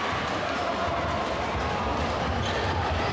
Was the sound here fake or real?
real